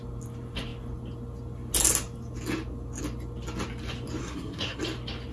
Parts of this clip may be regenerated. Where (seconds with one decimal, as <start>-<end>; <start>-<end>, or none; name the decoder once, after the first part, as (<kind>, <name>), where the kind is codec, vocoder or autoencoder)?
4.2-4.8 (codec, SNAC)

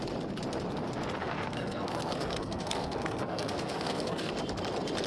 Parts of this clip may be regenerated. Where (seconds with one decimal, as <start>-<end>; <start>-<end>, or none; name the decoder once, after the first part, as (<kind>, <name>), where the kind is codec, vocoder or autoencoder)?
1.2-4.3 (codec, SNAC)

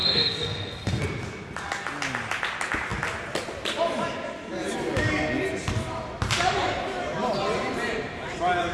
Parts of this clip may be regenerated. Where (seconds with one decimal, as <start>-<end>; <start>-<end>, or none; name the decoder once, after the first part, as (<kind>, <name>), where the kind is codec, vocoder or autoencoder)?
0.0-1.0 (codec, SNAC)